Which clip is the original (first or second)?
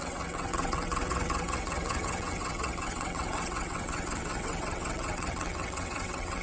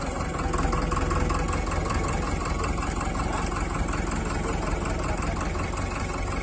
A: second